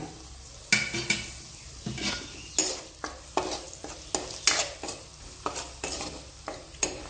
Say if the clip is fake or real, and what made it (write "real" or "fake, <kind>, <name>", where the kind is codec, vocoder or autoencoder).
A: real